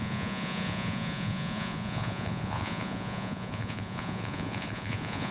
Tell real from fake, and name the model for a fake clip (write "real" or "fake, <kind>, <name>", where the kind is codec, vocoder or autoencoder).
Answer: fake, vocoder, Vocos